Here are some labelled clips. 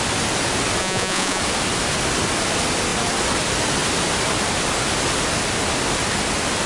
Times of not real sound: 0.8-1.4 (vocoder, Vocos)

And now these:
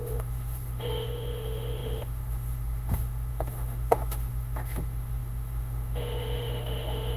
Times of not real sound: 0.0-7.2 (autoencoder, DAC-VAE)